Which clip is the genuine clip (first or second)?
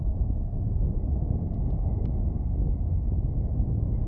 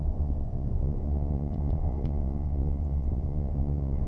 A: first